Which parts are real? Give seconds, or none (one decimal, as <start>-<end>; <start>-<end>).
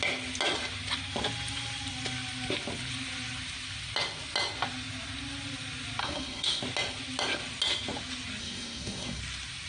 0.0-6.0; 6.6-8.4; 9.2-9.7